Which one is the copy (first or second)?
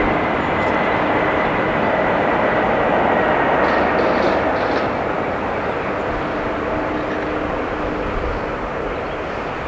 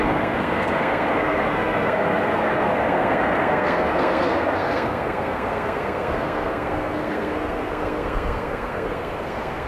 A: second